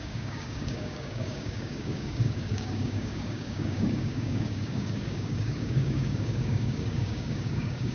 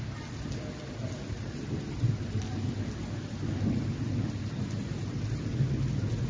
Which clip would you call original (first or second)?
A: second